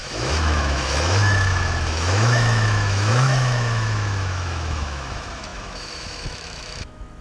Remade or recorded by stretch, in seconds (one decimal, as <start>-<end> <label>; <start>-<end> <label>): 0.0-7.2 remade